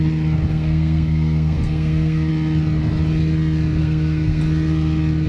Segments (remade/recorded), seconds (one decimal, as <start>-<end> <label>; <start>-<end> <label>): 0.0-0.5 recorded; 0.5-2.3 remade; 2.3-3.8 recorded; 3.8-4.4 remade; 4.4-5.3 recorded